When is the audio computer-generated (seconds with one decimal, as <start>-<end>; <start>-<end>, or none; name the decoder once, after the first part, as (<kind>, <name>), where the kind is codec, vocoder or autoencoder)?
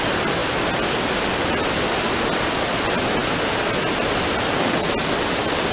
none